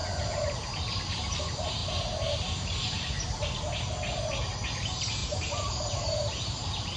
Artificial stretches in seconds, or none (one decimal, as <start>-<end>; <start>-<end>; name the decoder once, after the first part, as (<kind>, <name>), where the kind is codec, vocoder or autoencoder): 0.0-1.4 (vocoder, BigVGAN v2); 1.8-4.3; 5.2-7.0